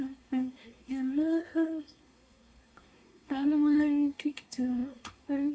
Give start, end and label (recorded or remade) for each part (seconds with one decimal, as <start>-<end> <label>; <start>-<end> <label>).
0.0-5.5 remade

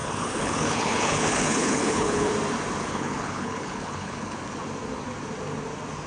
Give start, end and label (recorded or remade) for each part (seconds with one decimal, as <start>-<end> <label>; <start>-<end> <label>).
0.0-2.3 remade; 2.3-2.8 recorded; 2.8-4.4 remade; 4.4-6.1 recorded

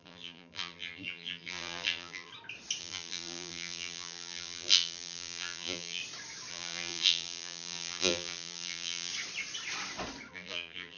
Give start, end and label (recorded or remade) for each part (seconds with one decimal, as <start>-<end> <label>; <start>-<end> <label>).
0.0-2.3 remade; 2.3-2.8 recorded; 2.8-6.0 remade; 6.0-6.5 recorded; 6.5-9.1 remade; 9.1-10.3 recorded; 10.3-11.0 remade

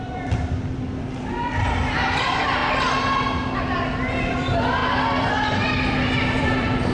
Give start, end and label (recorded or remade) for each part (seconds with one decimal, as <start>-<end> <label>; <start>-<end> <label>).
0.0-2.6 remade; 2.6-4.3 recorded; 4.3-6.9 remade